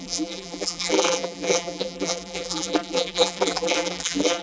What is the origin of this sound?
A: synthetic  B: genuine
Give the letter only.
A